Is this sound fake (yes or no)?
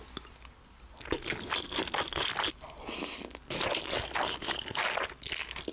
no